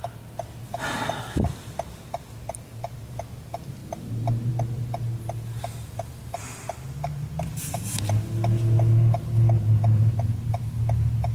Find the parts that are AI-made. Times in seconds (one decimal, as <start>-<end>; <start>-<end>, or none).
3.8-4.5